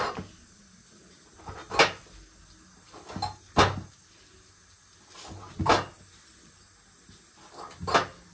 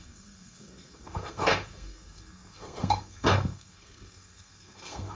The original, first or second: first